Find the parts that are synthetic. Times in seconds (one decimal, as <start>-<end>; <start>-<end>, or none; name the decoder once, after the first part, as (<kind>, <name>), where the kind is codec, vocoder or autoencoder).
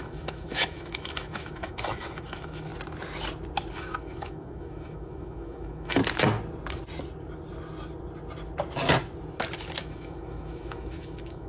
0.0-2.7 (autoencoder, DAC-VAE); 3.7-6.0; 9.8-11.5